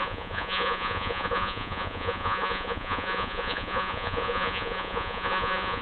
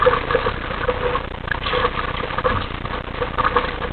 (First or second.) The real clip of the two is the second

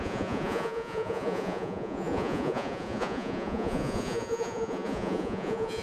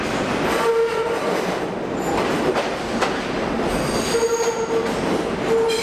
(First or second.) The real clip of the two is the second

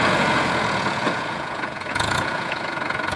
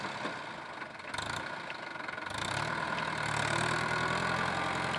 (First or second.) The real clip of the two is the second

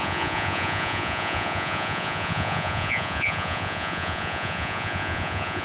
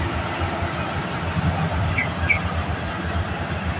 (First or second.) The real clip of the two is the second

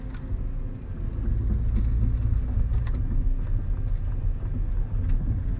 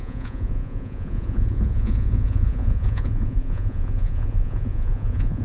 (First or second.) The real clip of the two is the first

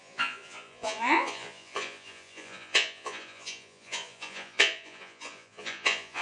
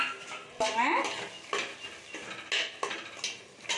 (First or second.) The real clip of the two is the second